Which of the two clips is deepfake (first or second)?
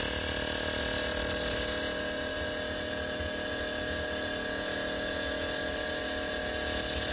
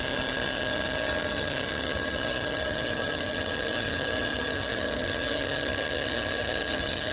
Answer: second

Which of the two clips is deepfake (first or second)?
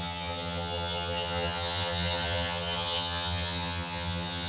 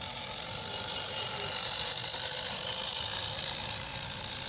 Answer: first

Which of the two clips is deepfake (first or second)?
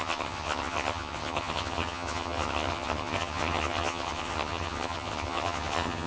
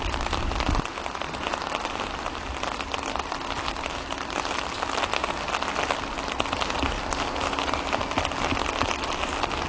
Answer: first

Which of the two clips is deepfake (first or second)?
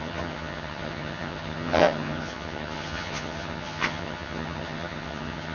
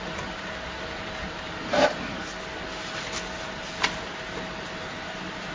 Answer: first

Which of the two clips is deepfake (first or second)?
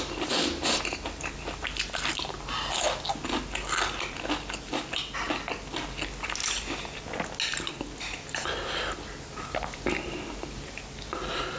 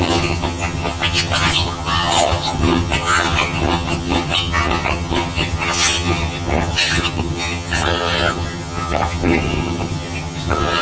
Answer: second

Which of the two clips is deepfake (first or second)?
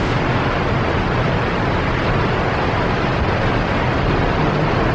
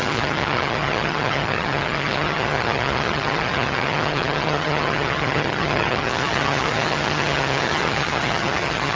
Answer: second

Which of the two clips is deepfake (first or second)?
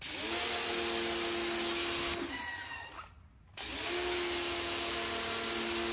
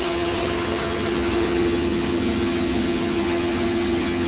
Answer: second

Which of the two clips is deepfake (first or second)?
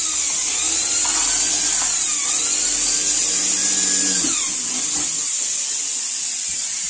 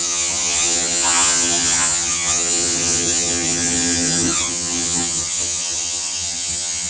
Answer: second